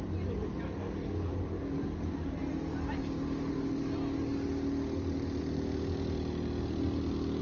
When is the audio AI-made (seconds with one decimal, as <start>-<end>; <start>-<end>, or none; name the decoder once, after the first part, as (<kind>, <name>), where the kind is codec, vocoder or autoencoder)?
none